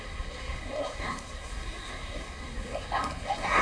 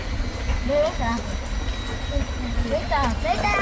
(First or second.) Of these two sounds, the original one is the second